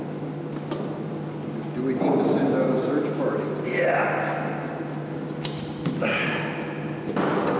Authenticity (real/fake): real